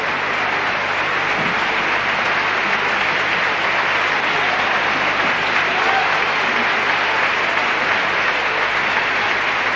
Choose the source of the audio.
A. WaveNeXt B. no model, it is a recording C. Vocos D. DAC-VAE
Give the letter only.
B